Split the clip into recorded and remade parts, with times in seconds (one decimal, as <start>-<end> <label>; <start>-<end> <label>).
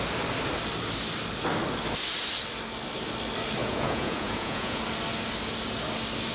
0.0-3.6 recorded; 3.6-4.8 remade; 4.8-6.3 recorded